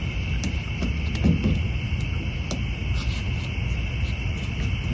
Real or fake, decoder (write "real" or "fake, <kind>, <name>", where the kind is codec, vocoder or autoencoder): real